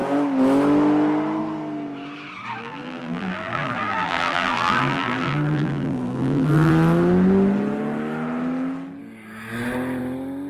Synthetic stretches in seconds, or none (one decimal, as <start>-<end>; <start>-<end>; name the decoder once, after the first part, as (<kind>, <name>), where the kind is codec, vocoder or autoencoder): 2.6-6.7 (vocoder, BigVGAN v2)